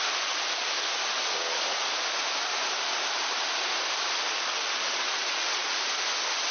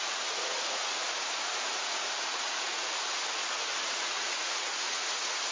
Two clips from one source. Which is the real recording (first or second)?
first